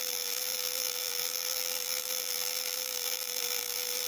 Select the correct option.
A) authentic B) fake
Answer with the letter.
B